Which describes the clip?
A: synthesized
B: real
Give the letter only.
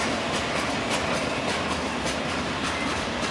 B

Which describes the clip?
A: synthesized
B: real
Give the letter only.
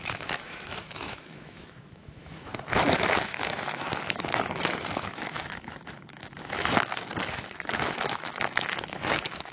A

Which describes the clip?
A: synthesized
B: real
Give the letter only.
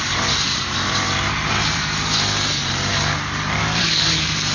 A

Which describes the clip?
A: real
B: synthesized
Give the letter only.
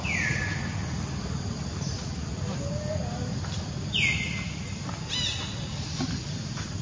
A